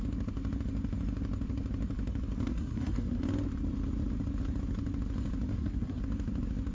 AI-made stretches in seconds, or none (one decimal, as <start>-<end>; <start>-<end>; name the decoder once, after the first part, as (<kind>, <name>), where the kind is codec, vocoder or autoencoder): 2.5-3.2 (codec, SNAC); 5.5-6.0